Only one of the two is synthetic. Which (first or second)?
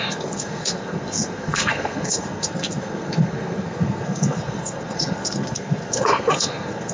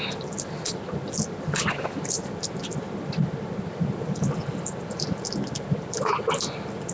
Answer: first